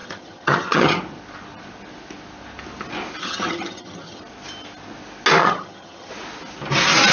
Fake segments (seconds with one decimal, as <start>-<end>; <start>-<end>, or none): 0.0-1.0; 3.2-4.2; 5.4-6.1